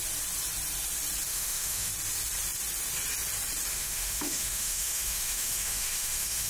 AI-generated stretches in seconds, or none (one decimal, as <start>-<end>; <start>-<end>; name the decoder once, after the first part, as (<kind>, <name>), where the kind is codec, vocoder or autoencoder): 1.3-1.9 (autoencoder, DAC-VAE); 3.7-6.5